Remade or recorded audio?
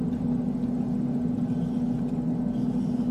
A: recorded